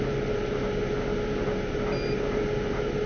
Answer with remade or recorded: recorded